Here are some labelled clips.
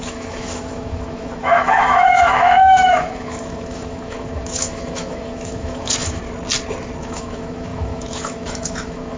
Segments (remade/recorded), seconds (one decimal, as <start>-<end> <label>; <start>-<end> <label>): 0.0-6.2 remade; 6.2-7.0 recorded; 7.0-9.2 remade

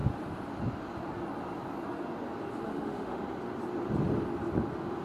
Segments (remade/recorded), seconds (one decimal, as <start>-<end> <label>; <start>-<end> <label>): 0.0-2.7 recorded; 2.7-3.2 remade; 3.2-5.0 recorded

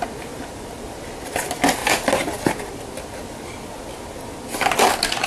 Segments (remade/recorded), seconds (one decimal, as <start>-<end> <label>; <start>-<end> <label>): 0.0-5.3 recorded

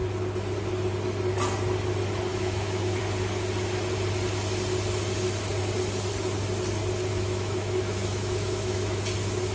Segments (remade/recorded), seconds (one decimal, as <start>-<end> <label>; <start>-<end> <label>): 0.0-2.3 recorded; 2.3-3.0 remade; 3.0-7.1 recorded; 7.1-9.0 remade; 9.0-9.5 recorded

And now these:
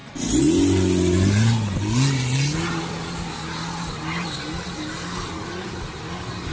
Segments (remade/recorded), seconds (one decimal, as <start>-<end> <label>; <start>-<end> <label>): 0.0-6.5 recorded

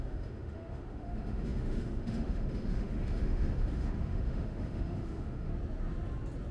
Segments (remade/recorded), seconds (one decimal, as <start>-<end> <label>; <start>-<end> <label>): 0.0-5.5 remade; 5.5-6.5 recorded

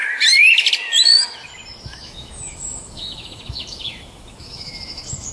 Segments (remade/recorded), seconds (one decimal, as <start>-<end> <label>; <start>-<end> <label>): 0.0-1.8 recorded; 1.8-5.3 remade